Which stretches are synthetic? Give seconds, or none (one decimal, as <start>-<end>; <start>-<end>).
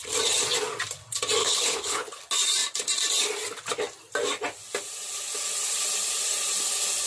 1.4-2.2